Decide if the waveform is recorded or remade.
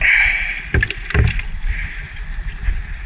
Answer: recorded